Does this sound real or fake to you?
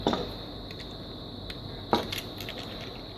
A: real